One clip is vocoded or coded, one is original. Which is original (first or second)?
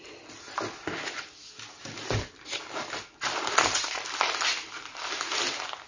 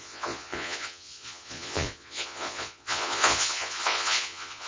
first